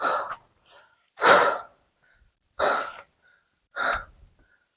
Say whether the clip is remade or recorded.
remade